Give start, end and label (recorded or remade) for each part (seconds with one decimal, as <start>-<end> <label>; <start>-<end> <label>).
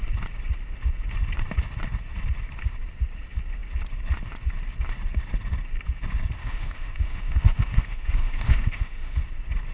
0.0-6.4 recorded; 6.4-9.2 remade; 9.2-9.7 recorded